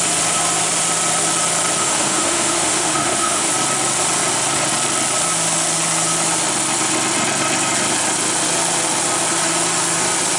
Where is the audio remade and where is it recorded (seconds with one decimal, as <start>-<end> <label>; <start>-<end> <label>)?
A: 0.0-1.8 recorded; 1.8-3.5 remade; 3.5-10.4 recorded